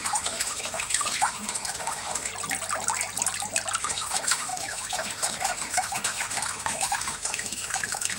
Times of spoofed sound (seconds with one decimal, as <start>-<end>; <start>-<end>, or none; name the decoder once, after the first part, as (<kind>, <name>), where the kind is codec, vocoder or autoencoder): 0.0-2.3 (autoencoder, DAC-VAE); 3.8-8.2